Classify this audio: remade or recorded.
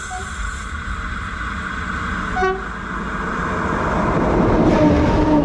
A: recorded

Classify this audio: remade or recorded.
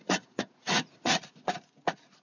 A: remade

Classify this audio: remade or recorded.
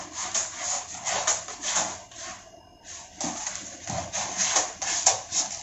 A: recorded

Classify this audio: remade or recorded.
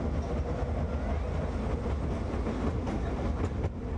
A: recorded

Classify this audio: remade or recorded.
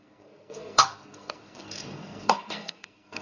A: remade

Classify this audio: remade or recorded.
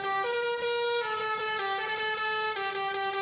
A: recorded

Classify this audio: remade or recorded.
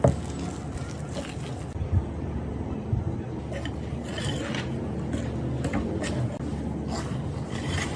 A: recorded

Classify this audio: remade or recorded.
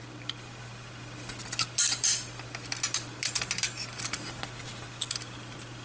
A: recorded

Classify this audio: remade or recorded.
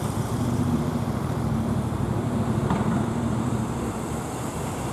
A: remade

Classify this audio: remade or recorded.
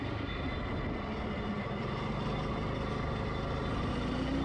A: recorded